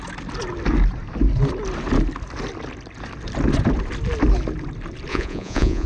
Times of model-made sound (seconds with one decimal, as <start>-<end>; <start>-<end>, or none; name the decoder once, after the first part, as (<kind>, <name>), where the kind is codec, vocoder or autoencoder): 5.1-5.9 (vocoder, Vocos)